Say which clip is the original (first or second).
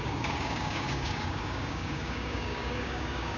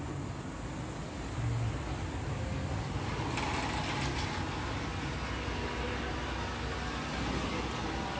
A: second